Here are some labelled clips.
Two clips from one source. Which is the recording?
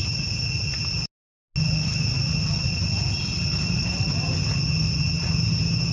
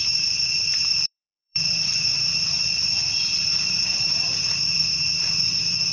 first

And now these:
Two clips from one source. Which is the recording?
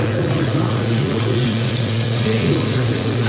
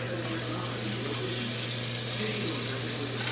second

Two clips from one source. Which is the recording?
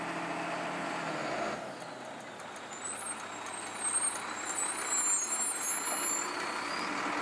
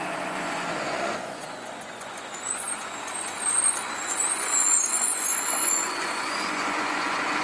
first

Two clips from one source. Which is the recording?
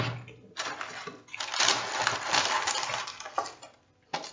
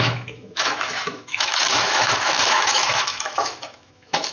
first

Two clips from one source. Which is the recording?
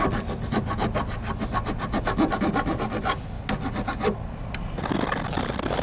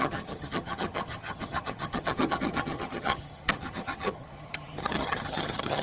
first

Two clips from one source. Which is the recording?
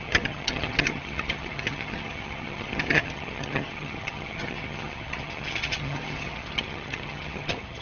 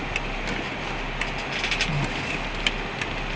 second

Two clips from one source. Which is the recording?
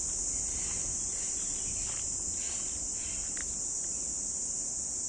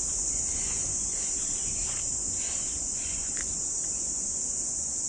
first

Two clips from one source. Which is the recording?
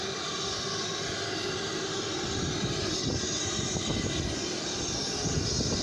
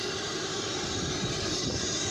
first